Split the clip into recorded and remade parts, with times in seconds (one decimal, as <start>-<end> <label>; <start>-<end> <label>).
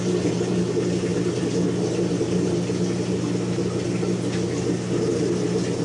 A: 0.0-5.8 recorded